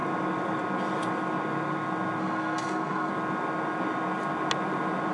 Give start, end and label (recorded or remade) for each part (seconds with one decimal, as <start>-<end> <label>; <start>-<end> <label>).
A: 0.0-2.2 recorded; 2.2-3.1 remade; 3.1-5.1 recorded